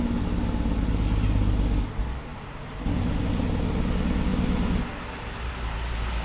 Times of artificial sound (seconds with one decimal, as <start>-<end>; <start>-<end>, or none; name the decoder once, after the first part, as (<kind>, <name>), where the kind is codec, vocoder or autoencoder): none